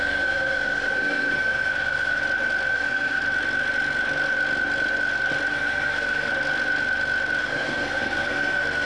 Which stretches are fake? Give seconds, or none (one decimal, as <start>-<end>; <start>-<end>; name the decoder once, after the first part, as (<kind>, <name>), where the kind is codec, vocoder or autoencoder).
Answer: 0.0-2.2 (codec, SNAC); 2.7-3.2; 5.5-6.3; 7.4-8.9